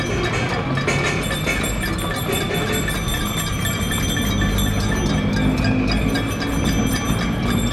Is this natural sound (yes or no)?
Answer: yes